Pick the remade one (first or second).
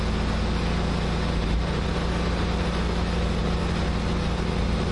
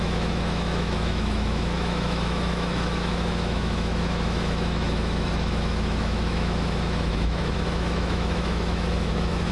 second